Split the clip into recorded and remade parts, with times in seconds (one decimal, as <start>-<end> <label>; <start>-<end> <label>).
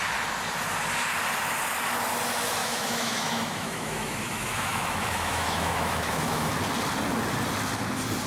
0.0-2.6 recorded; 2.6-6.5 remade; 6.5-8.3 recorded